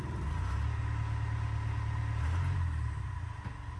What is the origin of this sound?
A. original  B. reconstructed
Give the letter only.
A